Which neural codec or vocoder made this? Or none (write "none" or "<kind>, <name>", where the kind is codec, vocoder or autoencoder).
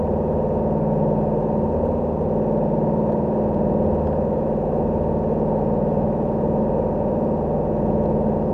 none